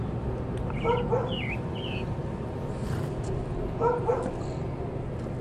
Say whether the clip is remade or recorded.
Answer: recorded